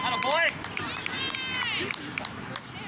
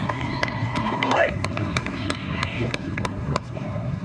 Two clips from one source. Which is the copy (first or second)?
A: second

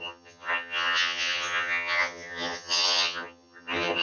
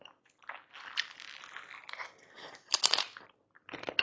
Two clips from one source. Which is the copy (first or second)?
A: first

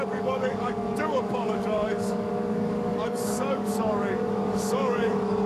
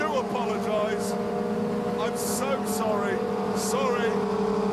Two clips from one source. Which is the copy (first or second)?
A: first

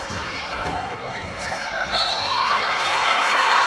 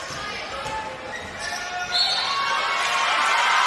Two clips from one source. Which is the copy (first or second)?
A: first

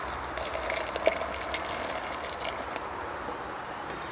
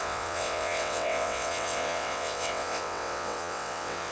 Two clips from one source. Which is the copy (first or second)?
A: second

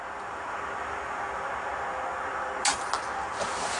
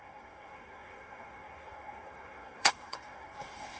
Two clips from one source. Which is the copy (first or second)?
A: second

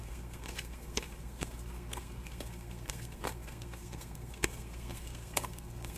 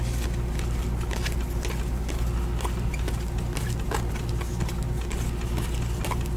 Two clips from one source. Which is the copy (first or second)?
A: first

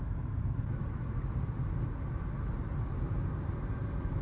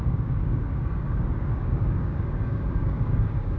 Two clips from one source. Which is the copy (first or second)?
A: second